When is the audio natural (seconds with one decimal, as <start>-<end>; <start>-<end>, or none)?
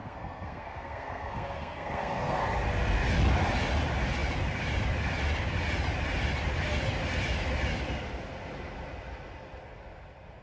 2.4-10.4